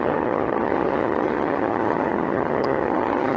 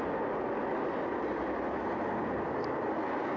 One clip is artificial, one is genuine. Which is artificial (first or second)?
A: first